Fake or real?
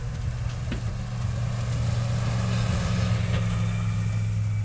real